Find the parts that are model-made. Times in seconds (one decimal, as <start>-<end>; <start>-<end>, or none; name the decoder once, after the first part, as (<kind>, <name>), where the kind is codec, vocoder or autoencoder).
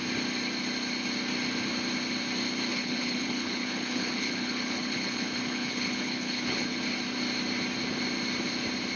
2.7-6.8 (codec, HILCodec)